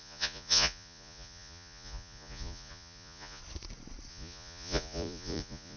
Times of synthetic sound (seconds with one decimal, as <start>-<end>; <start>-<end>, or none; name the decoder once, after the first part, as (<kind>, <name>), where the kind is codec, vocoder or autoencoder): 0.0-3.4 (vocoder, Vocos); 4.1-5.8